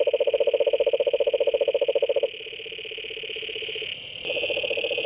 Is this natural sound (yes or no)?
yes